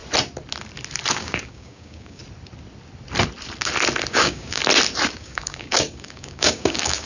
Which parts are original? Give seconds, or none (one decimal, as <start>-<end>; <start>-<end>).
0.0-1.1; 2.2-4.1; 4.6-5.2